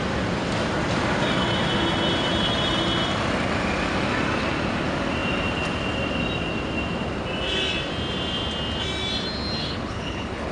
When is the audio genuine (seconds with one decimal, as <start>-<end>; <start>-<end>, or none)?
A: 0.0-9.6